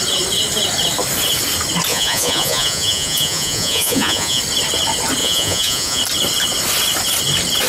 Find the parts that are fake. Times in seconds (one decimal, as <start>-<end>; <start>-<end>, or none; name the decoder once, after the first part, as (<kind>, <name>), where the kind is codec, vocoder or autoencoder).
1.9-4.4 (vocoder, Vocos); 5.2-6.0